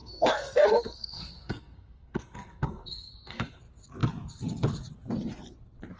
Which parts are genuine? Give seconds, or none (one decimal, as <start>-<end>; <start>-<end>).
3.6-6.0